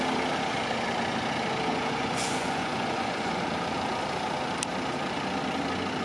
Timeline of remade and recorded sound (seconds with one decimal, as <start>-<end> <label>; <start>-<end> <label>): 0.0-1.7 recorded; 1.7-3.4 remade; 3.4-6.0 recorded